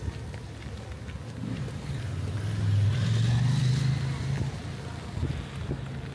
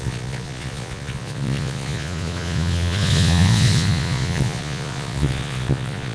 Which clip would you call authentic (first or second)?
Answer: first